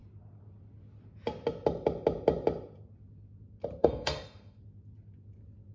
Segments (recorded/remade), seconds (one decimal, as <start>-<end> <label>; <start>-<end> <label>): 0.0-3.8 recorded; 3.8-4.6 remade; 4.6-5.7 recorded